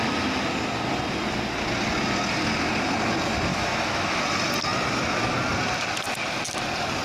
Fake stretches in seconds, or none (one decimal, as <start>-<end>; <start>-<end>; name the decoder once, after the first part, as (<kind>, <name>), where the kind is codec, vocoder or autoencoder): 3.5-4.2 (autoencoder, DAC-VAE)